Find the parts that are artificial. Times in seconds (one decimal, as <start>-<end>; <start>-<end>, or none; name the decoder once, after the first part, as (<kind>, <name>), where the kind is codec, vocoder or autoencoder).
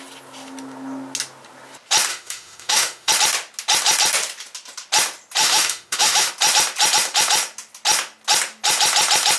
2.1-3.1 (autoencoder, DAC-VAE); 5.4-6.3